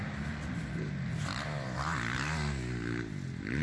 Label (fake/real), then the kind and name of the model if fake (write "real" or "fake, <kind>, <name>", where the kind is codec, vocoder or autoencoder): real